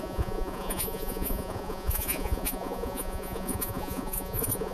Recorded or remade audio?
remade